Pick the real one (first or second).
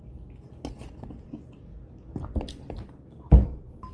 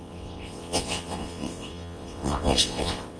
first